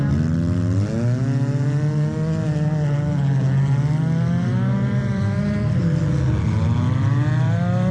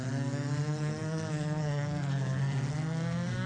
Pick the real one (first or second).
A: first